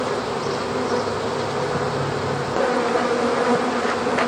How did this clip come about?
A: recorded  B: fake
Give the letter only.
A